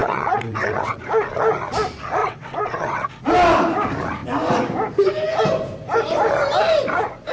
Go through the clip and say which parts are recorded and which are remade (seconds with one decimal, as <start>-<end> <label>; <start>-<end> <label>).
0.0-1.0 remade; 1.0-2.2 recorded; 2.2-3.1 remade; 3.1-7.3 recorded